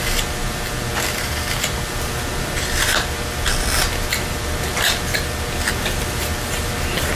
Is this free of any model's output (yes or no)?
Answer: yes